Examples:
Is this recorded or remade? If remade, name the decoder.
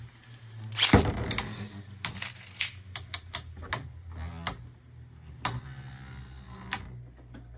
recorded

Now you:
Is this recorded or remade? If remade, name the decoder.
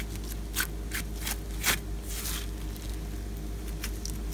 recorded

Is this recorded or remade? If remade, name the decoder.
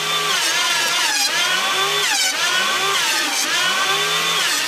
recorded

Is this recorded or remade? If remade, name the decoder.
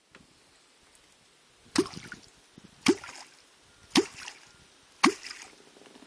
recorded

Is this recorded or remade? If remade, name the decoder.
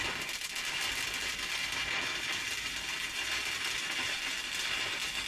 recorded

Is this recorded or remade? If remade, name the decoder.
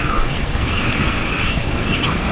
remade, codec, SNAC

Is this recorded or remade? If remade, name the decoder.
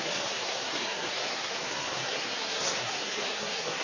remade, codec, SNAC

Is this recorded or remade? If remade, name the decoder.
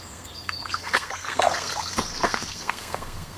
remade, codec, SNAC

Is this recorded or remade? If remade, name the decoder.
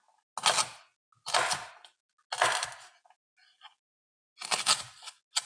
recorded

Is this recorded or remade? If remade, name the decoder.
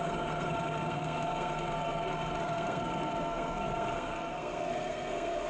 remade, codec, SNAC